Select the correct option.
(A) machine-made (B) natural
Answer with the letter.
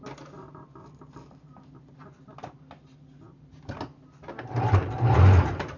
B